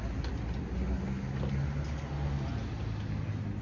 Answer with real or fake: real